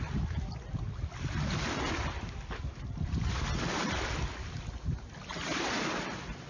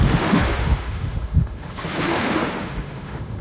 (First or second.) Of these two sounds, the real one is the first